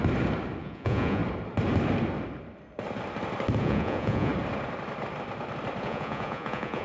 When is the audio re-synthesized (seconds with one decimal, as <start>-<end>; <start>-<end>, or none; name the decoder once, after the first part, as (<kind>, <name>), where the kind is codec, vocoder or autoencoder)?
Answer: 0.6-1.2 (vocoder, Vocos); 3.6-4.3; 5.8-6.8